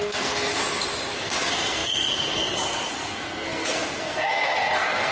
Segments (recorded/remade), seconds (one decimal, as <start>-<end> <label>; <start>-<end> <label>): 0.0-0.6 remade; 0.6-1.2 recorded; 1.2-5.1 remade